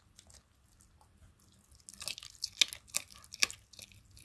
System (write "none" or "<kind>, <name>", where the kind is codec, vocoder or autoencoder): none